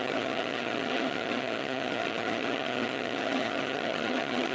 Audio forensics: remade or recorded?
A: remade